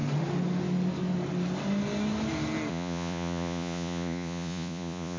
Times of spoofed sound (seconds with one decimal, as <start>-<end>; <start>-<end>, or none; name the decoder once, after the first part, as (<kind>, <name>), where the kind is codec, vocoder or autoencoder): 2.7-5.2 (vocoder, Vocos)